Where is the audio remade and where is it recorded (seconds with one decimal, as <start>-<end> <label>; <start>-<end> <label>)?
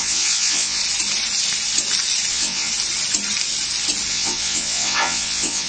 0.0-0.8 remade; 0.8-2.3 recorded; 2.3-2.7 remade; 2.7-4.1 recorded; 4.1-5.7 remade